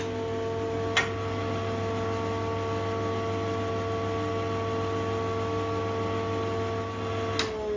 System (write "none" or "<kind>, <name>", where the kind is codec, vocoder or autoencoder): none